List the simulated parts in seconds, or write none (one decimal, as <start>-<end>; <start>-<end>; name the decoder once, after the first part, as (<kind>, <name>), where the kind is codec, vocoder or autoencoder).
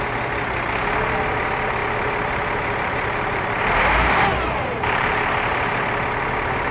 1.8-5.8 (vocoder, BigVGAN v2)